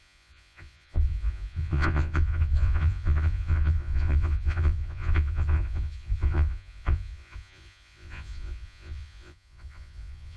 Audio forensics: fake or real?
fake